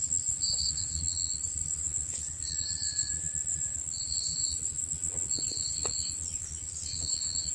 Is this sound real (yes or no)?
no